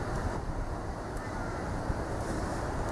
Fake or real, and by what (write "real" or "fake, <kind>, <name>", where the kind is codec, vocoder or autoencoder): real